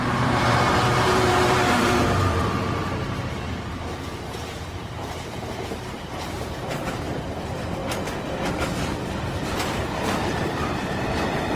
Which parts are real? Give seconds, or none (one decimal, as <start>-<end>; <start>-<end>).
7.8-9.0